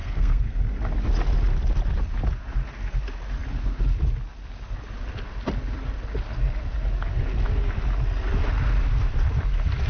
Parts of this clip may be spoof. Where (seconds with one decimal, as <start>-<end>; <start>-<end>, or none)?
0.0-0.6